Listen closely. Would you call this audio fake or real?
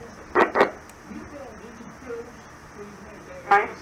real